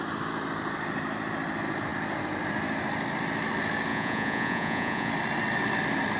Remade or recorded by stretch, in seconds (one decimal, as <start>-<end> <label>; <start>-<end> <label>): 0.0-3.9 recorded; 3.9-5.1 remade; 5.1-6.2 recorded